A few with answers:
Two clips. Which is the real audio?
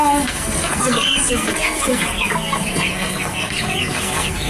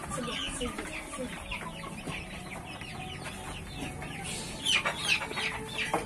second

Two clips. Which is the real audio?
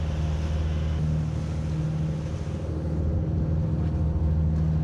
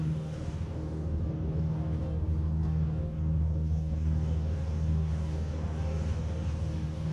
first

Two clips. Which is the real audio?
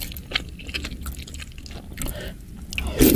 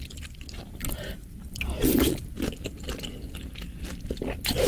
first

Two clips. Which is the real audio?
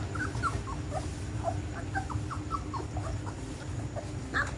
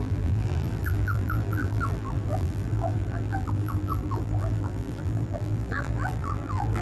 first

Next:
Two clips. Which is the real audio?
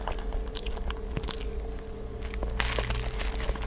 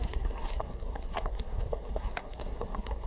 first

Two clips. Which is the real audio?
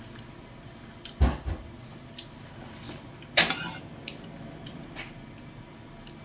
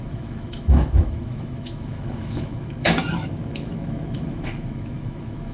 first